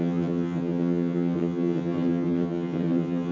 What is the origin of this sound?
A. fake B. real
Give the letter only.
A